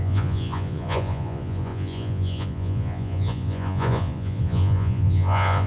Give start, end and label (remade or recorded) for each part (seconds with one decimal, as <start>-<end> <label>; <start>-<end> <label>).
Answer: 0.0-5.7 remade